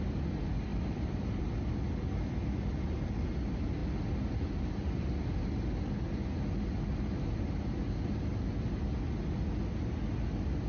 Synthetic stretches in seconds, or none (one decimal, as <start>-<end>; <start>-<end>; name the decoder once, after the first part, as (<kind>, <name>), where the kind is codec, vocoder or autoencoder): 0.7-1.4 (vocoder, BigVGAN v2)